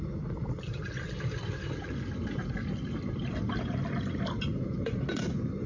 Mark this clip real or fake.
real